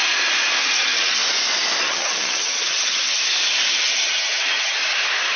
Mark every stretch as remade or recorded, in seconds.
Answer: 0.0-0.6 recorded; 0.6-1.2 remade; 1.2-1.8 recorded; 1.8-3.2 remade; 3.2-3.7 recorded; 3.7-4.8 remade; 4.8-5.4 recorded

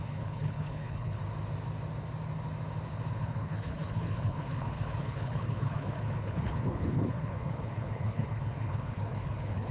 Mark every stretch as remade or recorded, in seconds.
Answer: 0.0-1.2 remade; 1.2-3.1 recorded; 3.1-9.7 remade

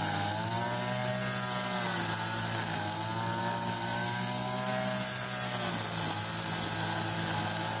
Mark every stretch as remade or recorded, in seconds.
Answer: 0.0-7.8 recorded

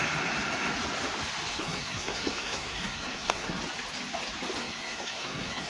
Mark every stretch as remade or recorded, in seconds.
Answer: 0.0-1.5 recorded; 1.5-3.6 remade; 3.6-4.6 recorded; 4.6-5.7 remade

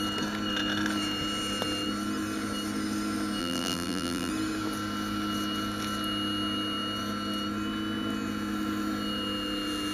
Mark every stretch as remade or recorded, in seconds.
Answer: 0.0-3.4 recorded; 3.4-4.3 remade; 4.3-9.9 recorded

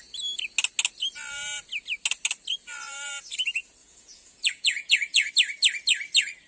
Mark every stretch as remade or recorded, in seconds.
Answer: 0.0-3.8 recorded; 3.8-5.3 remade; 5.3-6.5 recorded